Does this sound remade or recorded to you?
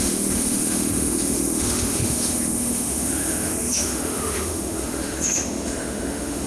remade